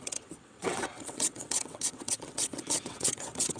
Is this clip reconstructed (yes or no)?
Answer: yes